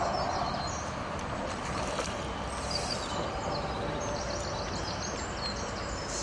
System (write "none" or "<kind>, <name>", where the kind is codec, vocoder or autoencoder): none